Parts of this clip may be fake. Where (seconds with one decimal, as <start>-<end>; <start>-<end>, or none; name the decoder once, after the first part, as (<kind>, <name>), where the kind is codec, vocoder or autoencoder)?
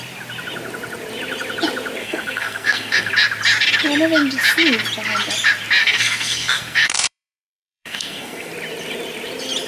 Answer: 2.0-3.1 (codec, SNAC); 5.8-8.5